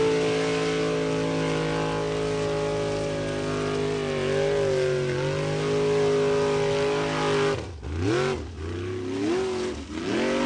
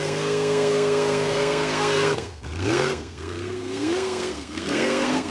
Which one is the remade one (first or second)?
second